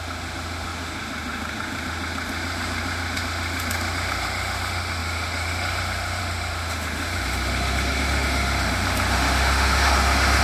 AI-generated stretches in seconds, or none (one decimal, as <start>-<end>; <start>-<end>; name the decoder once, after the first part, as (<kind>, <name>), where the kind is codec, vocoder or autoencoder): 0.0-10.4 (autoencoder, DAC-VAE)